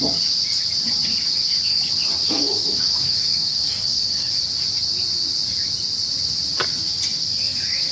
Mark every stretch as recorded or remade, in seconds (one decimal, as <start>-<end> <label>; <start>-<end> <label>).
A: 0.0-1.3 recorded; 1.3-1.8 remade; 1.8-2.2 recorded; 2.2-4.5 remade; 4.5-7.1 recorded; 7.1-7.9 remade